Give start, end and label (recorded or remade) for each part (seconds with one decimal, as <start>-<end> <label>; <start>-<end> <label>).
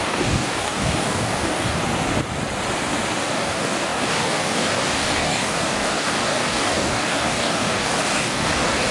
0.0-1.8 remade; 1.8-3.2 recorded; 3.2-8.9 remade